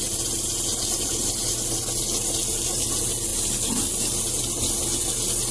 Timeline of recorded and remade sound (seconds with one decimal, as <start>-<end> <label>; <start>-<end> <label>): 0.0-5.5 recorded